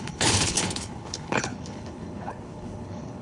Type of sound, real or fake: fake